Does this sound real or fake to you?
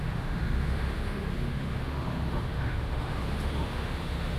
fake